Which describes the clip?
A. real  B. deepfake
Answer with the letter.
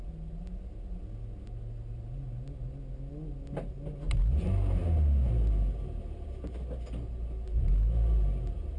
A